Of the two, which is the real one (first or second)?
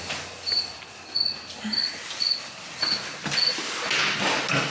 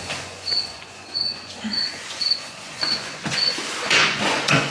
first